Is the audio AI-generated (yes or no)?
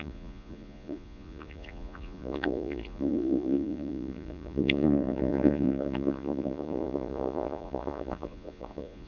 yes